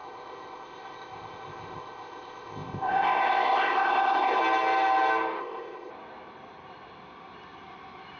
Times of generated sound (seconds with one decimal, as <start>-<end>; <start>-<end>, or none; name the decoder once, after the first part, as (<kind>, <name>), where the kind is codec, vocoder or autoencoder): 0.0-4.4 (codec, ZipCodec); 5.4-5.9